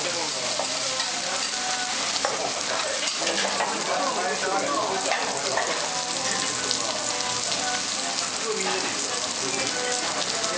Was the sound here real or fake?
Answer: real